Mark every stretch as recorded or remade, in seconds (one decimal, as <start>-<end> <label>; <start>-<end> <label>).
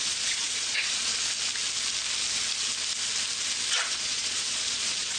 0.0-1.1 remade; 1.1-3.8 recorded; 3.8-5.2 remade